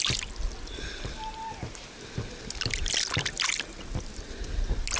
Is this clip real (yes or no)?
yes